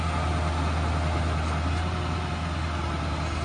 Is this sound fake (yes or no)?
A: no